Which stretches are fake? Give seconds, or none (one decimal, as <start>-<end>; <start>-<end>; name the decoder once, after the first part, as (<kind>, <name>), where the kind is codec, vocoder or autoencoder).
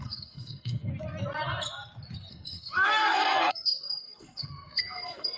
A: 0.0-0.9 (codec, SNAC); 2.3-5.4